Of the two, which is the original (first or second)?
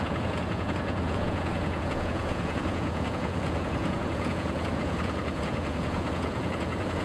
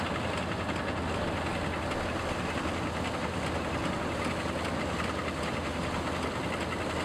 second